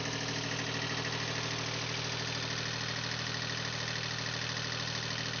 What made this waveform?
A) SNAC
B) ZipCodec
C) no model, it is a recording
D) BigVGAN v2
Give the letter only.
C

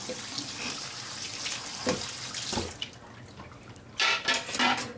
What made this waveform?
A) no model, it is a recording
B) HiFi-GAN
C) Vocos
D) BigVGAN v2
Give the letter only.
A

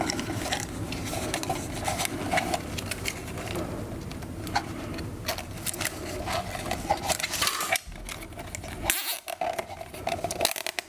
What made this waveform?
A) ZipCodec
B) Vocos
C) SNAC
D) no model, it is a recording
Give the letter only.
D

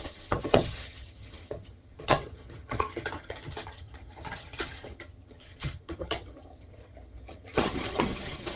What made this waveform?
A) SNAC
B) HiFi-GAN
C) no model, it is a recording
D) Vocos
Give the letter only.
B